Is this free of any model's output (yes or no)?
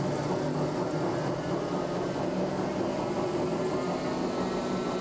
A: yes